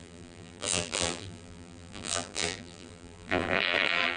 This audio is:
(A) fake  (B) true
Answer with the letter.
A